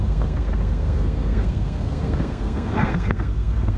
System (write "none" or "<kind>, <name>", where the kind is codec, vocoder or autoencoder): codec, SNAC